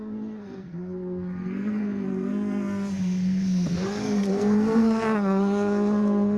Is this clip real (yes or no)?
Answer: no